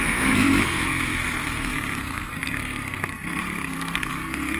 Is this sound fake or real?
fake